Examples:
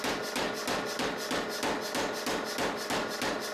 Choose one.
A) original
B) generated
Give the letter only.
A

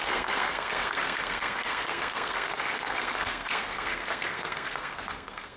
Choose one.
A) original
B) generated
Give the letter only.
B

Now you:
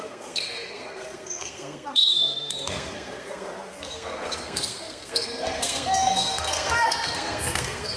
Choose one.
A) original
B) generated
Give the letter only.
B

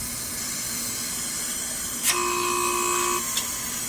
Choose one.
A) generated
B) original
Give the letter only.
B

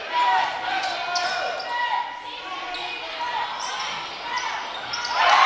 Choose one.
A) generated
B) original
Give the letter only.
B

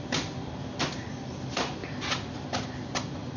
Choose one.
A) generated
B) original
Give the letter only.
B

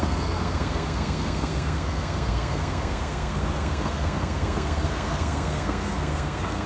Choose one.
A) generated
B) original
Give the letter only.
A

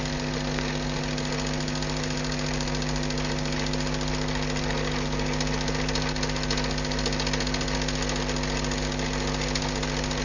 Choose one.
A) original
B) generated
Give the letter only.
A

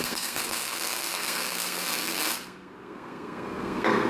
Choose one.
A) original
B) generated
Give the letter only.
B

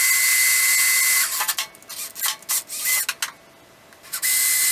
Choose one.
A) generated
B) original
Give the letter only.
B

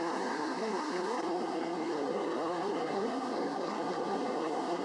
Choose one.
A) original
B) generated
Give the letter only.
B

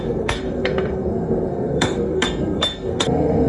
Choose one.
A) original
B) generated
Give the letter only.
B